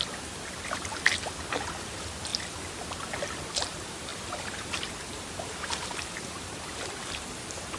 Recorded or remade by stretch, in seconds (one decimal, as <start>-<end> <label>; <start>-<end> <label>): 0.0-0.9 remade; 0.9-1.8 recorded; 1.8-2.3 remade; 2.3-3.4 recorded; 3.4-7.8 remade